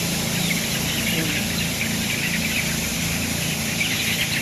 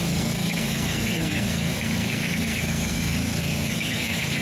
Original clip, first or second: first